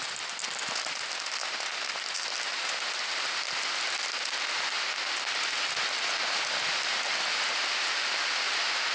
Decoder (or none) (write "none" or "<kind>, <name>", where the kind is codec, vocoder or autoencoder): none